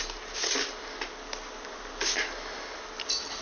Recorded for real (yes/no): yes